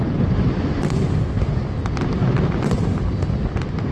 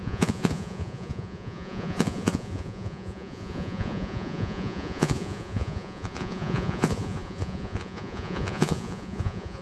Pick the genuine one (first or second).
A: first